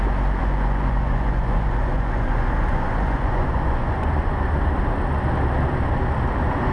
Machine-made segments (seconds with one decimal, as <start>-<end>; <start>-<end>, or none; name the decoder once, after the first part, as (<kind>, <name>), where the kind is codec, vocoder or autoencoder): 0.4-4.4 (vocoder, Vocos)